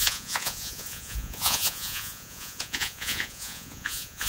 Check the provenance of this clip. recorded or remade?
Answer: remade